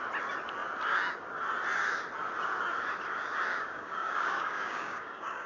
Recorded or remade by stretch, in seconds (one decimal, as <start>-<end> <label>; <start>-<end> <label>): 0.0-3.5 recorded; 3.5-5.5 remade